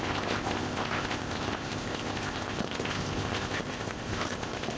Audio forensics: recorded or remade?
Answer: remade